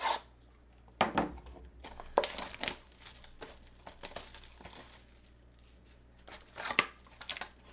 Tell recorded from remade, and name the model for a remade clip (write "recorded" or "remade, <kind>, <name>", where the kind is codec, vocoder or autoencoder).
recorded